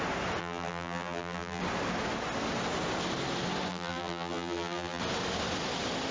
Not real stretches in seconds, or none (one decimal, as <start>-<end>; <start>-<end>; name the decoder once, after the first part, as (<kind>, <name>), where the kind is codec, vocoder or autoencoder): 0.4-1.6 (vocoder, BigVGAN v2); 3.7-5.0